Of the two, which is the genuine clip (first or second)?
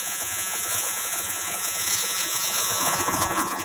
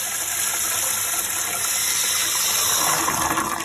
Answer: second